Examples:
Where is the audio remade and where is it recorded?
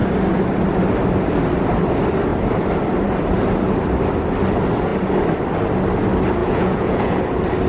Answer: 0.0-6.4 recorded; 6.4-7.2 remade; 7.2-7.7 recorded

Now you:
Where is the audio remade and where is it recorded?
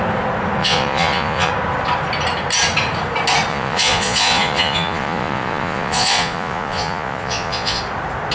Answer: 0.0-0.6 recorded; 0.6-1.5 remade; 1.5-3.5 recorded; 3.5-7.8 remade; 7.8-8.3 recorded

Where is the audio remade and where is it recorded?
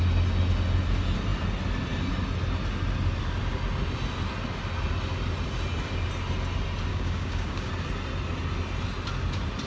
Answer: 0.0-6.9 recorded; 6.9-7.7 remade; 7.7-9.7 recorded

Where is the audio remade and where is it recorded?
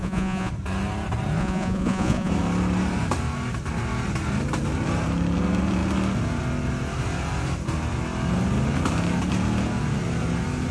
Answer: 0.0-0.5 remade; 0.5-1.4 recorded; 1.4-2.3 remade; 2.3-10.7 recorded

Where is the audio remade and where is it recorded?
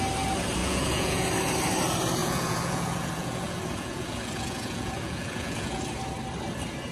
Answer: 0.0-0.6 recorded; 0.6-1.3 remade; 1.3-2.2 recorded; 2.2-5.8 remade; 5.8-6.9 recorded